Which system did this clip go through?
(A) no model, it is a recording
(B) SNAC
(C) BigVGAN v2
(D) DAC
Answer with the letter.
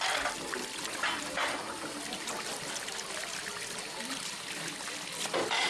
A